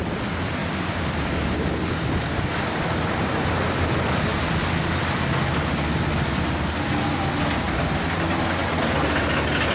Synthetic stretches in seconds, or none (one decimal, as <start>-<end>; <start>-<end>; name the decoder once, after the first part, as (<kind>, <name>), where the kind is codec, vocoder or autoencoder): none